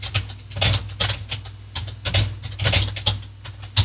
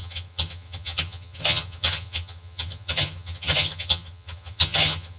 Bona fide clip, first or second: first